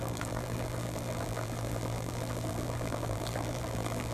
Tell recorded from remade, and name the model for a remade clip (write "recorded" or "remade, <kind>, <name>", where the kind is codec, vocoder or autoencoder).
remade, vocoder, BigVGAN v2